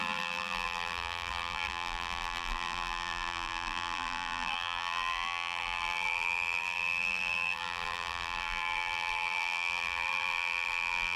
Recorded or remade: remade